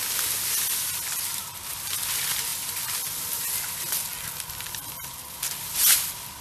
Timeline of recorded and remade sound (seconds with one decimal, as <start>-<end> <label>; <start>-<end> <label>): 0.0-1.3 recorded; 1.3-1.9 remade; 1.9-6.4 recorded